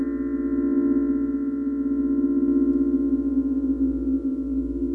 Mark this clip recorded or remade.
recorded